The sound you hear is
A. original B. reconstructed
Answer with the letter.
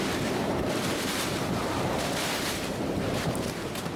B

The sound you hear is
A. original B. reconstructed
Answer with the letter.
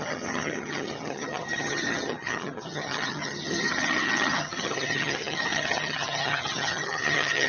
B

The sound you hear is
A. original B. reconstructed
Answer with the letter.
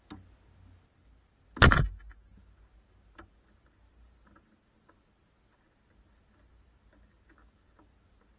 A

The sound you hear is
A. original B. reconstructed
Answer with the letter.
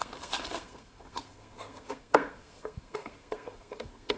B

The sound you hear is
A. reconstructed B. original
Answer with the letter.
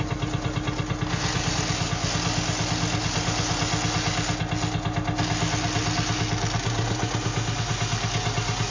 B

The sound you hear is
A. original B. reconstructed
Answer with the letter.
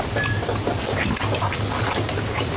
A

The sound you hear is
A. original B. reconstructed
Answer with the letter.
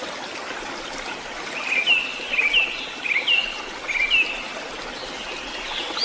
A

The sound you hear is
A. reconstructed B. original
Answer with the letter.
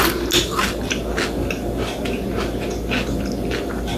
B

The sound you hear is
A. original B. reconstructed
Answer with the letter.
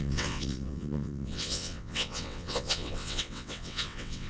B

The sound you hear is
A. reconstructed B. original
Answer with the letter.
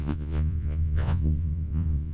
A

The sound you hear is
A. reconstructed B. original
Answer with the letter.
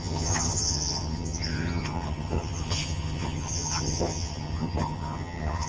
A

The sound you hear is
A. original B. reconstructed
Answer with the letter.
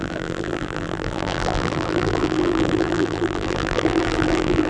B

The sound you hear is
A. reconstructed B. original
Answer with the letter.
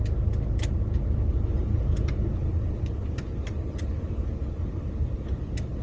B